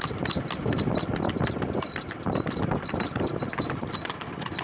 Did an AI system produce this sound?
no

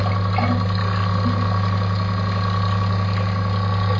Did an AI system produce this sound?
no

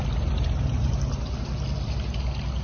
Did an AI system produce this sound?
no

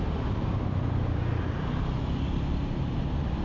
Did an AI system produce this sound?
no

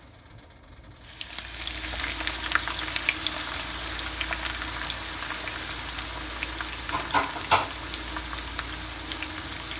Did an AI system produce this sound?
no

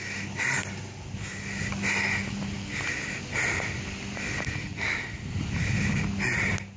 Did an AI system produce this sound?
no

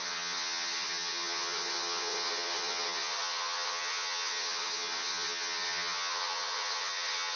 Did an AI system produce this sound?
yes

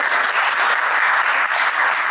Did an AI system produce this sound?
no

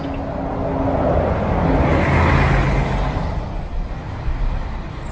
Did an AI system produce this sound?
no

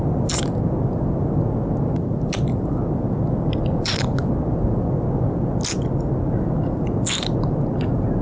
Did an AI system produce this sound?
no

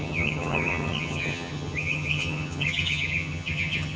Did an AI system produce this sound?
yes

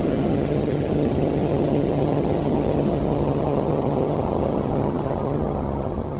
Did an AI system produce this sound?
yes